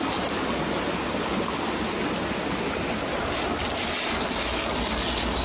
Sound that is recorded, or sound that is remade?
recorded